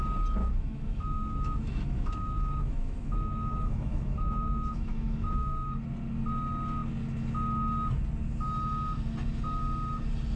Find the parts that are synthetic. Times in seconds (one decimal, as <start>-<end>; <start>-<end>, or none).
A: 0.4-5.7